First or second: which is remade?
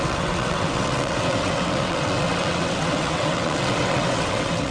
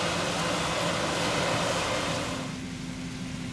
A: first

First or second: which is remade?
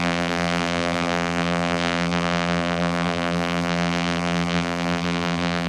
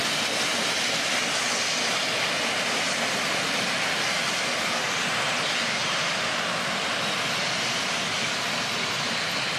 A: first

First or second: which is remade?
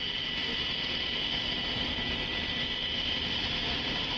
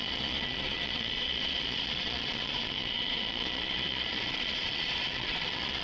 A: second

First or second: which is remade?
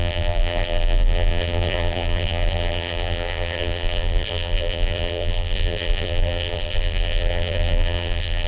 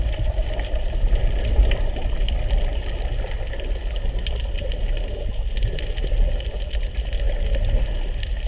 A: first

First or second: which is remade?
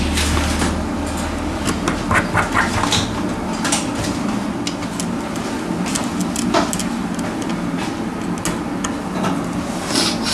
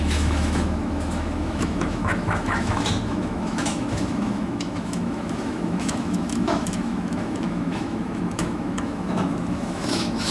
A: second